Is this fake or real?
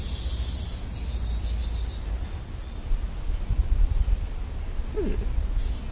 real